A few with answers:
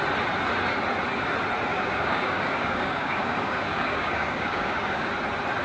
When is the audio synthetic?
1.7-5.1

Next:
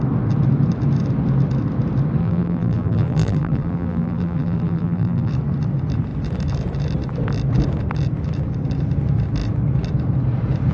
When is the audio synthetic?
2.2-5.3

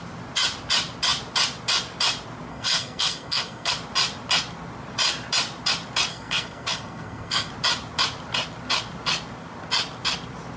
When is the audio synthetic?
2.5-3.7; 6.1-7.5

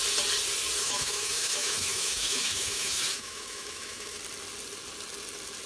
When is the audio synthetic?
0.8-4.2

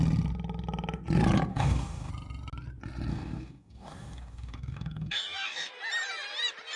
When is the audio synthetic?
1.5-2.1; 3.1-5.7

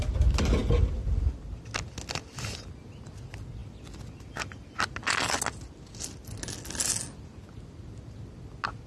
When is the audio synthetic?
none